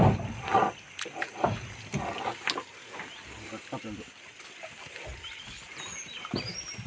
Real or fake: real